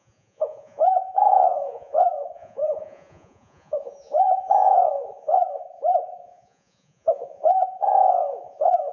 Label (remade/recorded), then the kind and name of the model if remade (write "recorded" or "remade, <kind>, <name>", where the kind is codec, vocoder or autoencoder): remade, vocoder, Vocos